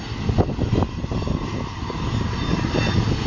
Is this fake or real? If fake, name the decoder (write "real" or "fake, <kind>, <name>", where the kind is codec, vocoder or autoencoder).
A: real